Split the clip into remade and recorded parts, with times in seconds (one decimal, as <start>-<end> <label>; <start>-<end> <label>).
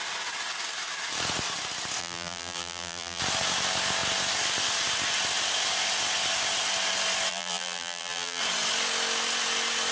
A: 0.0-2.0 recorded; 2.0-3.2 remade; 3.2-7.3 recorded; 7.3-8.4 remade; 8.4-9.9 recorded